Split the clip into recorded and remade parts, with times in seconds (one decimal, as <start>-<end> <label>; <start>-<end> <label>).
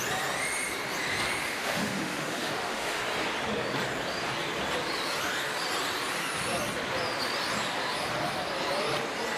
0.0-1.4 recorded; 1.4-3.0 remade; 3.0-9.4 recorded